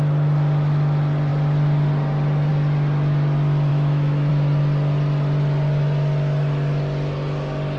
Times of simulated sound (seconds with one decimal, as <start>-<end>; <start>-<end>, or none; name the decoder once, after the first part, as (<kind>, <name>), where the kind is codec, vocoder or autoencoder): 3.7-4.3 (autoencoder, DAC-VAE)